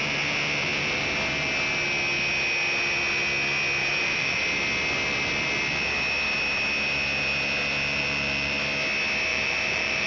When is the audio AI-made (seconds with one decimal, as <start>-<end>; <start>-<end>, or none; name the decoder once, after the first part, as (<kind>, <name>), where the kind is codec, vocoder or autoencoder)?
3.8-4.4 (vocoder, BigVGAN v2); 9.3-10.1